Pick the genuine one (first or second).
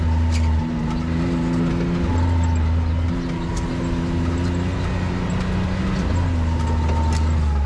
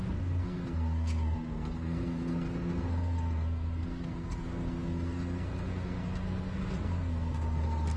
first